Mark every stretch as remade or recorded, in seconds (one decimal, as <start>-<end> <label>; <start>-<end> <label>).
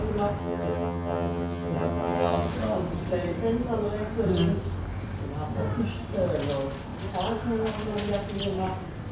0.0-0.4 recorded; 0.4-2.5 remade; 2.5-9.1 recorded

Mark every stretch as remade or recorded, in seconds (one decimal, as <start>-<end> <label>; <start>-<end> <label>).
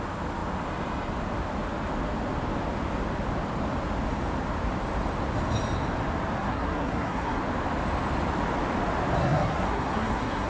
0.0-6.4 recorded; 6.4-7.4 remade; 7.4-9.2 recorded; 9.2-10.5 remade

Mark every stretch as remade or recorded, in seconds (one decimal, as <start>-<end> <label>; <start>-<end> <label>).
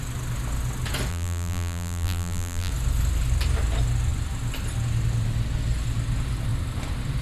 0.0-1.1 recorded; 1.1-2.7 remade; 2.7-7.2 recorded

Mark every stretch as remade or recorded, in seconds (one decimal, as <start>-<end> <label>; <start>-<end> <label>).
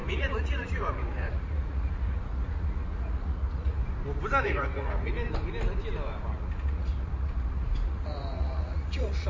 0.0-3.8 remade; 3.8-4.4 recorded; 4.4-5.1 remade; 5.1-6.3 recorded; 6.3-9.3 remade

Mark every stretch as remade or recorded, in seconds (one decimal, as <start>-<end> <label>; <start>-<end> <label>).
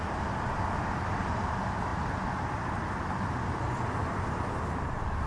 0.0-5.3 recorded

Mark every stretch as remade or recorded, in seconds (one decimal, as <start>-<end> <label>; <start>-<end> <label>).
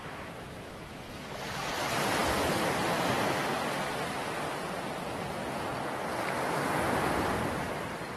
0.0-1.3 remade; 1.3-8.2 recorded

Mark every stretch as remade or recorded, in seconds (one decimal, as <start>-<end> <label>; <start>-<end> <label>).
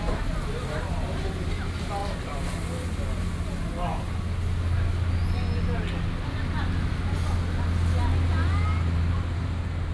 0.0-9.9 recorded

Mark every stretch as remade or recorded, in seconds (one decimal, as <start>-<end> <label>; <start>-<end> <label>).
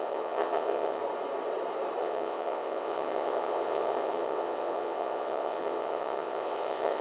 0.0-1.0 remade; 1.0-2.0 recorded; 2.0-7.0 remade